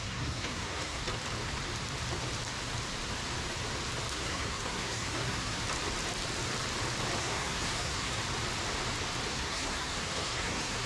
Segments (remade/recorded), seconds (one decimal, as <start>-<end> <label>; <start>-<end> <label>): 0.0-1.0 remade; 1.0-4.1 recorded; 4.1-5.6 remade; 5.6-7.2 recorded; 7.2-8.2 remade; 8.2-9.3 recorded; 9.3-10.9 remade